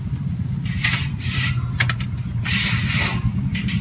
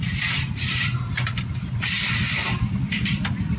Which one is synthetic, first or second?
second